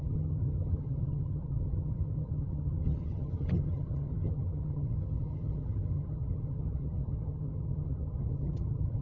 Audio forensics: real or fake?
fake